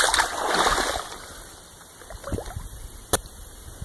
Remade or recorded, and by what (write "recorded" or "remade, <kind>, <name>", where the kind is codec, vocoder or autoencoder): recorded